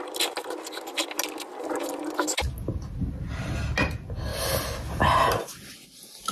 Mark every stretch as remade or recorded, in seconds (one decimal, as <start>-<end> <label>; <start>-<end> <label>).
0.0-6.3 recorded